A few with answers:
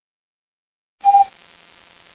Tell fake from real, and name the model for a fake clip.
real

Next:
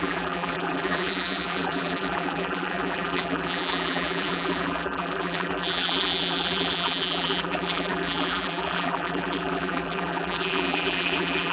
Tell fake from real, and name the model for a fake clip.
fake, vocoder, BigVGAN v2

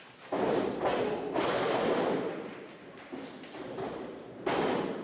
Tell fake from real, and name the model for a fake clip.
real